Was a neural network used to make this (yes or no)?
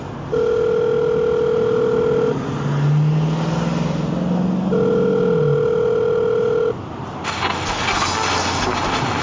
no